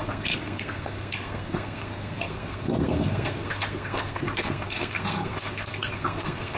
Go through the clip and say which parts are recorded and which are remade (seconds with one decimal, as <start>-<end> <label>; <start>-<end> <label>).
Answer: 0.0-6.6 remade